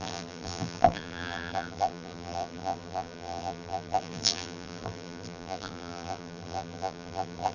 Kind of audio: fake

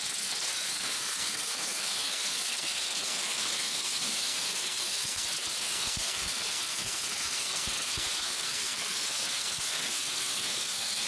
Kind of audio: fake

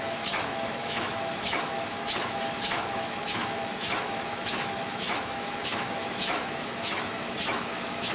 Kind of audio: fake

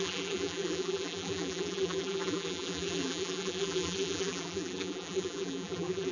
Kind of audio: fake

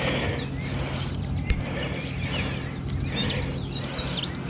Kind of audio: real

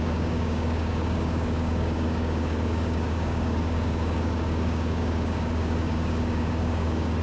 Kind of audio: fake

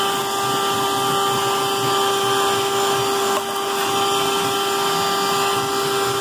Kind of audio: real